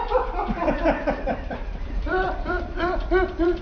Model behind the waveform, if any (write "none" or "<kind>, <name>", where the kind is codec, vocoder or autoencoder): vocoder, BigVGAN v2